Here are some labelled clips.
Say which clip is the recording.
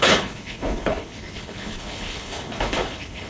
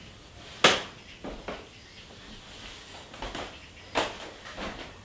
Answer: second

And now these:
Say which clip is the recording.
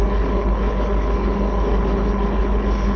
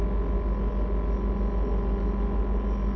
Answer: second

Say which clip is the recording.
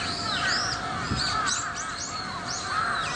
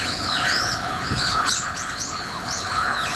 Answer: first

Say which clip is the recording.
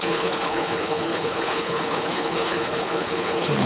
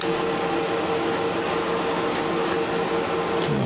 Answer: second